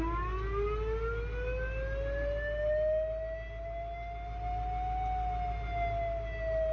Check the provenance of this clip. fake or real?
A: real